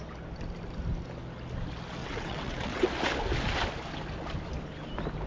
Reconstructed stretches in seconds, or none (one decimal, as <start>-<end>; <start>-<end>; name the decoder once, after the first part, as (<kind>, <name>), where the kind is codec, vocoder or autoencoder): 2.0-2.9 (vocoder, WaveNeXt)